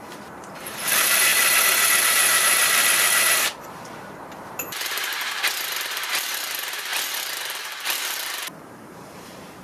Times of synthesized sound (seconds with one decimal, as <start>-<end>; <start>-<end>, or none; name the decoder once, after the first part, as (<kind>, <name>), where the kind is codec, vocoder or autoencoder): 0.0-1.3 (vocoder, BigVGAN v2); 2.0-5.1; 6.1-6.9; 7.6-9.6